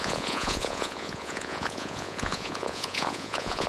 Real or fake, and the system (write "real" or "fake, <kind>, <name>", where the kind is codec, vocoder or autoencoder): fake, vocoder, Vocos